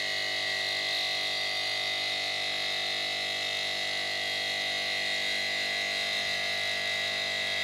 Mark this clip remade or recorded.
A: recorded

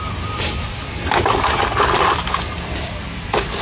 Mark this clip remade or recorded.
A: recorded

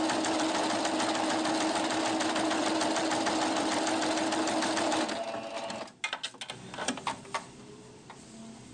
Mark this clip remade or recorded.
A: recorded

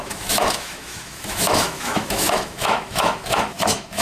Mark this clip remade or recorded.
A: remade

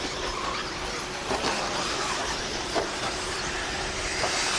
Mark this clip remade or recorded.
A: remade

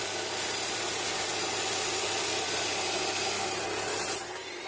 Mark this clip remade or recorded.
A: recorded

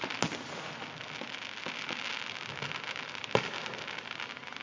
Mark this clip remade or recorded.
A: recorded